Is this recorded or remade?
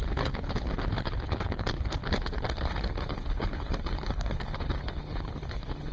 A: remade